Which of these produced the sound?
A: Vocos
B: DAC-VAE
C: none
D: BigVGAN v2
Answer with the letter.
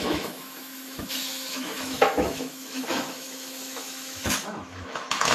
B